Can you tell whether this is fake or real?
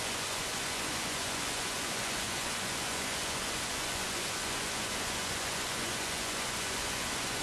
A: fake